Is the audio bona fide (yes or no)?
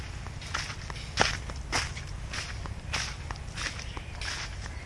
yes